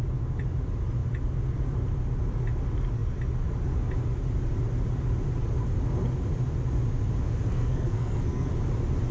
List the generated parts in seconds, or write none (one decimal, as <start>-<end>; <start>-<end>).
7.5-8.5